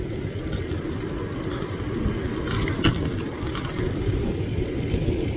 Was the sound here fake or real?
real